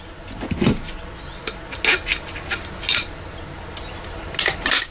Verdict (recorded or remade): recorded